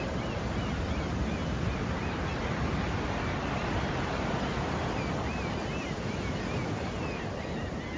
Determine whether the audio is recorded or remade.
recorded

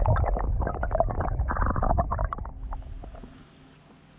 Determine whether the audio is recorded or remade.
recorded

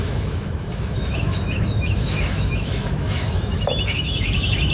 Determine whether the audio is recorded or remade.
remade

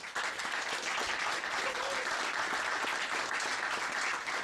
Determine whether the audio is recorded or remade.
recorded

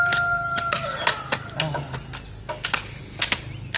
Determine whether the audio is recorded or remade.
recorded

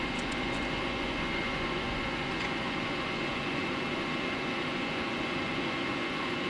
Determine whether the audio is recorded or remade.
remade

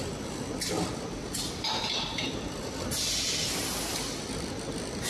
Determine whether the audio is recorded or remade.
recorded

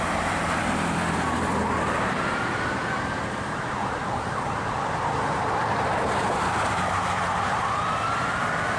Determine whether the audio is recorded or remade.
remade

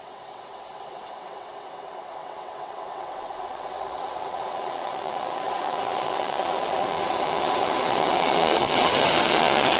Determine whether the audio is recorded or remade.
remade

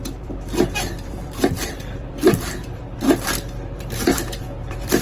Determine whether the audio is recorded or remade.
remade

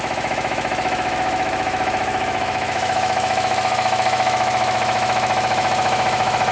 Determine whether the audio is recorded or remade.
remade